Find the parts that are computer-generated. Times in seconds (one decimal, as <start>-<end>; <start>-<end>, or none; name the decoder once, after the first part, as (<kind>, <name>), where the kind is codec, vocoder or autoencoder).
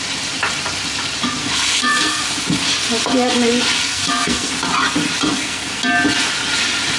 1.4-2.3 (codec, SNAC); 3.8-4.5; 5.3-5.8